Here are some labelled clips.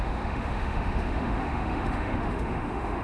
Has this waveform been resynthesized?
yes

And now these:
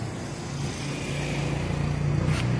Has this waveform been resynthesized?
no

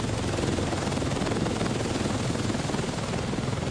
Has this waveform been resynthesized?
no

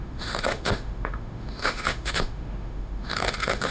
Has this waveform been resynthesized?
yes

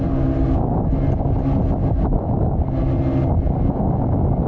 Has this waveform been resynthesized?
no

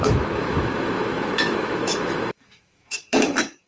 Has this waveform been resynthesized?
yes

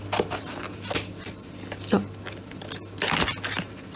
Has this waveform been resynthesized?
no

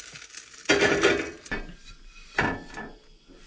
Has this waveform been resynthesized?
no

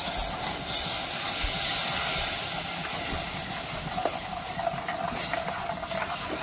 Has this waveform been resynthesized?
no